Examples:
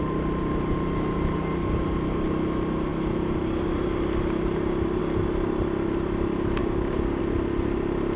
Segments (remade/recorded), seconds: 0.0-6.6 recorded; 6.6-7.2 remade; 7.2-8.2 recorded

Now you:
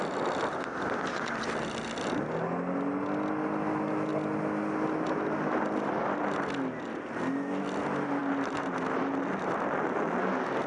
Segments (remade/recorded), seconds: 0.0-10.7 recorded